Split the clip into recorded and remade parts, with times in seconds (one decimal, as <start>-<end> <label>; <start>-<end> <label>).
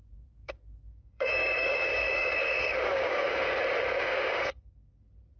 0.0-0.4 recorded; 0.4-3.6 remade; 3.6-4.0 recorded; 4.0-5.0 remade; 5.0-5.4 recorded